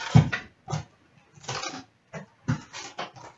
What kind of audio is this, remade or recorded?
recorded